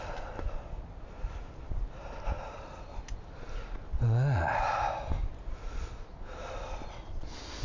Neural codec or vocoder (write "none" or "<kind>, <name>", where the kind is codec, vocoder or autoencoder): none